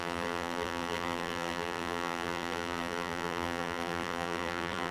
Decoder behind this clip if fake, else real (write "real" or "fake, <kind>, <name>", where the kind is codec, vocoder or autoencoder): fake, vocoder, BigVGAN v2